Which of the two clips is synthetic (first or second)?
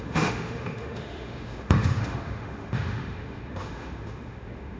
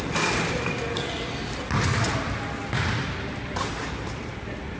first